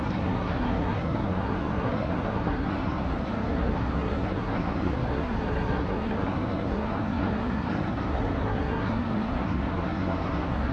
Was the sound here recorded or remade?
remade